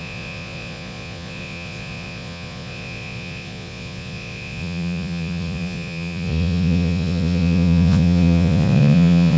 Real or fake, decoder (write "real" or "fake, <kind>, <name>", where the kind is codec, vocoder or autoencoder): fake, vocoder, Vocos